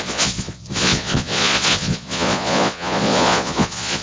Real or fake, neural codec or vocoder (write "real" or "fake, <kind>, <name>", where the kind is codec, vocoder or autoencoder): fake, vocoder, Vocos